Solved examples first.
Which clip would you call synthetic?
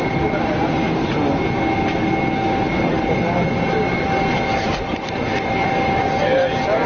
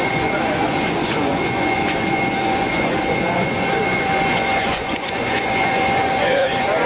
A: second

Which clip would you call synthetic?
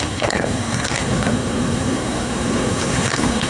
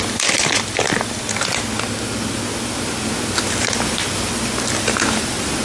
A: first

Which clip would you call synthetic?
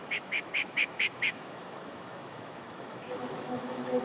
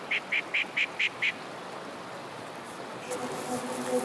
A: first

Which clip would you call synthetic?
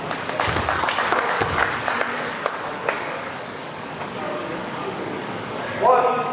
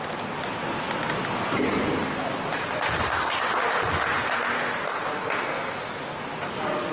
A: first